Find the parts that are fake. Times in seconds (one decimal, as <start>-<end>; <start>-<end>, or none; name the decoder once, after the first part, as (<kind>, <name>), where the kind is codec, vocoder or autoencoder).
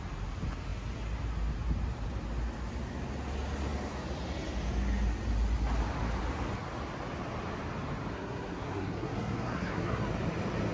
8.1-10.0 (codec, SNAC)